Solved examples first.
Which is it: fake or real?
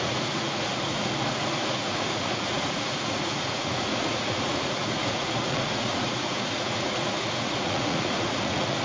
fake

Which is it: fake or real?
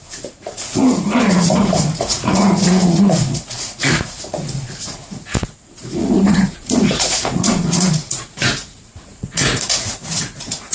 fake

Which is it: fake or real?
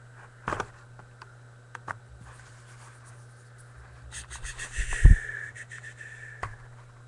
real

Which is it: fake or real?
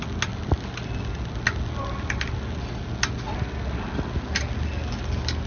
real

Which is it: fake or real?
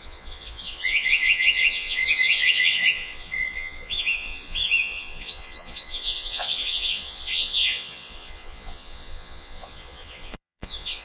fake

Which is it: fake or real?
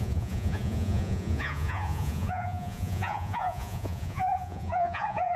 fake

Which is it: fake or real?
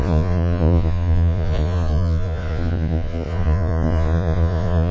fake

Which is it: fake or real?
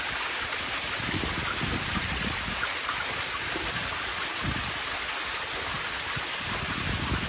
real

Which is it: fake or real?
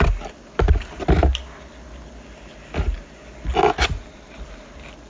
real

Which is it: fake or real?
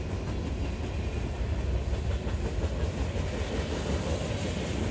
real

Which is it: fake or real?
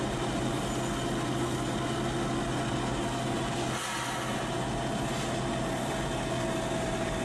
real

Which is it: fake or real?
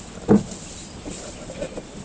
real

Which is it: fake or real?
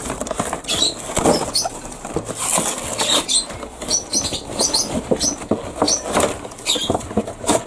real